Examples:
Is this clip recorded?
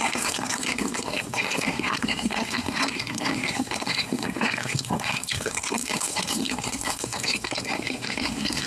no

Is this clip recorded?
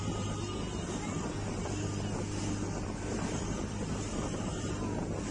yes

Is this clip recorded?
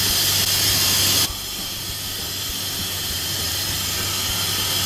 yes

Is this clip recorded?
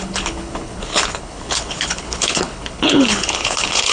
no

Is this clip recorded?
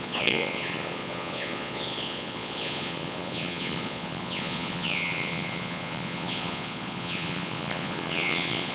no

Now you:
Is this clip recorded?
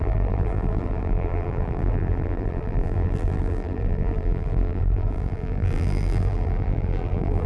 no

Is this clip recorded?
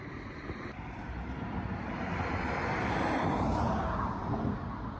no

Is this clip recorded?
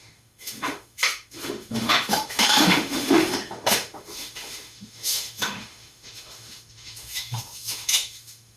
no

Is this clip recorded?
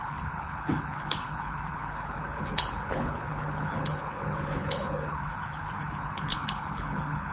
no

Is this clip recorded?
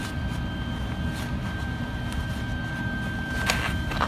yes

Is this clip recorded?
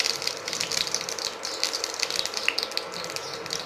yes